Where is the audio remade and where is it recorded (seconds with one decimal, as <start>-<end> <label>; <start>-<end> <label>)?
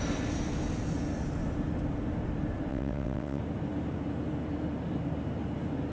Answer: 0.0-2.7 recorded; 2.7-3.4 remade; 3.4-5.9 recorded